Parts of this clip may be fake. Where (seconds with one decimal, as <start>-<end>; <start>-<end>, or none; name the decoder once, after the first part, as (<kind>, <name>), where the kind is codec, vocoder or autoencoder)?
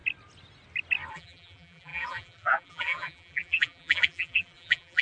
1.1-5.0 (vocoder, BigVGAN v2)